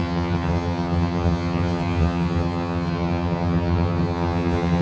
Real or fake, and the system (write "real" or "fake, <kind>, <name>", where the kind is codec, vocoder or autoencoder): fake, vocoder, HiFi-GAN